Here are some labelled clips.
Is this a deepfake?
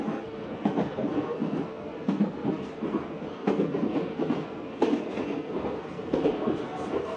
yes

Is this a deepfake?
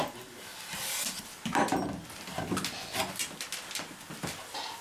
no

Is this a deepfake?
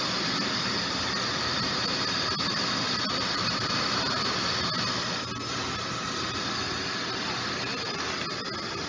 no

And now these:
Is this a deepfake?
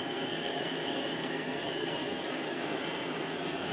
yes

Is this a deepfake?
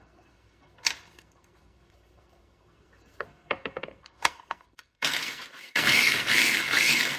yes